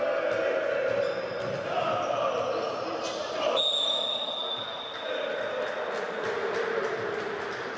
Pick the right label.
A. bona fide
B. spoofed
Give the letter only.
A